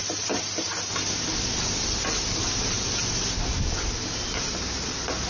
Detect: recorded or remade recorded